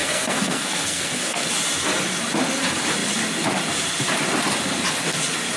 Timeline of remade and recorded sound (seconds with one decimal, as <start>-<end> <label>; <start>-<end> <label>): 0.0-1.5 remade; 1.5-5.6 recorded